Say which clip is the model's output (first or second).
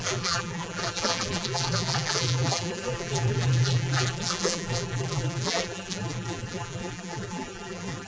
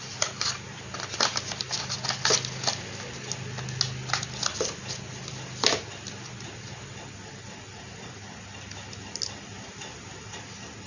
first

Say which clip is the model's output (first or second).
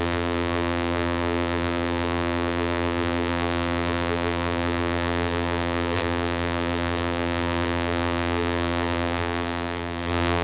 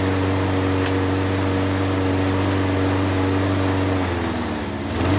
first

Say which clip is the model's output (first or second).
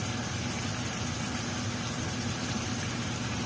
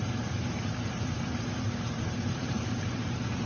second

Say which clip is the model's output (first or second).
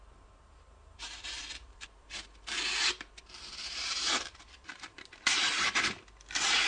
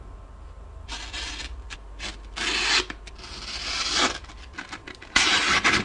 first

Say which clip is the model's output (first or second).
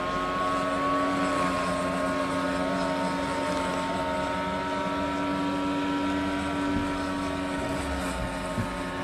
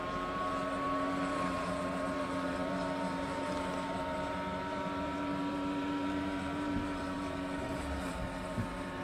second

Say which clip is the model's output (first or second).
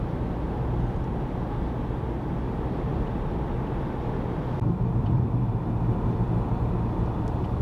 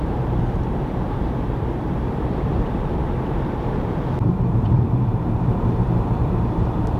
second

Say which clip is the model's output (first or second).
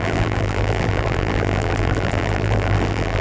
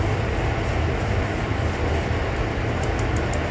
first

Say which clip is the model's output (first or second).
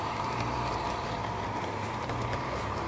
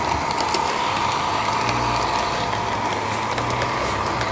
first